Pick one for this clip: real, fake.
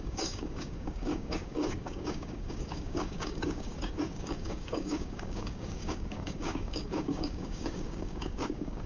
fake